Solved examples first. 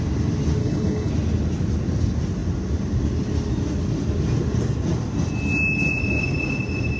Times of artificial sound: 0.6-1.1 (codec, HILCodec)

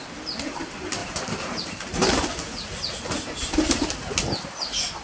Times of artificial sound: 1.0-2.5 (vocoder, BigVGAN v2)

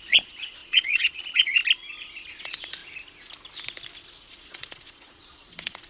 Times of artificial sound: 0.0-1.6 (vocoder, Vocos); 2.3-2.8; 4.2-5.9

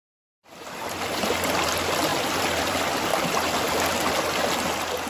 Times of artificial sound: 0.0-3.1 (vocoder, BigVGAN v2)

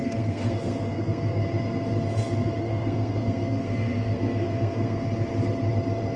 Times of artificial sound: 0.0-1.4 (codec, SNAC); 2.6-5.0

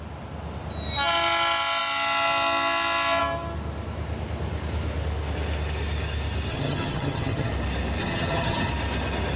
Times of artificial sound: 6.5-7.5 (vocoder, HiFi-GAN); 8.0-8.7